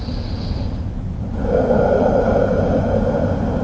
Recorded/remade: recorded